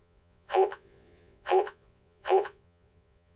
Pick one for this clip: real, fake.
fake